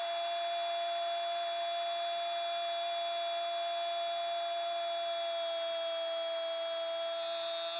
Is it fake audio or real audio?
real